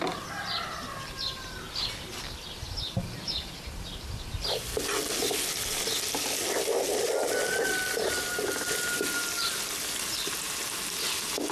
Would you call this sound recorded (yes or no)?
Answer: yes